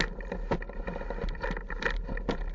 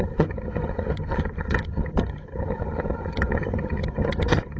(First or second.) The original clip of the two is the first